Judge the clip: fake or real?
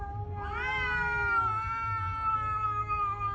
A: real